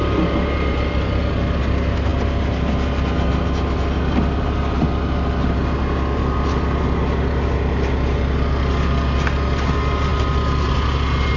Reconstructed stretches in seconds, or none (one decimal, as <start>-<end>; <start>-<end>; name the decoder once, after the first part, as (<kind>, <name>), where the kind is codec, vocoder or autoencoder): none